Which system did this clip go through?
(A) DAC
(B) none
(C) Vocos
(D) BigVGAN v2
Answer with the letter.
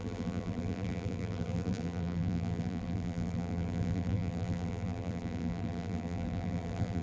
D